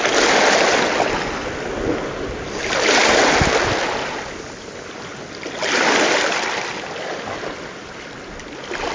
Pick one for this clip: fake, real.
real